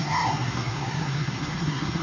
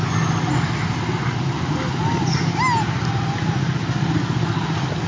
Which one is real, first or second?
second